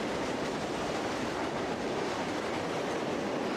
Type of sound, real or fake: real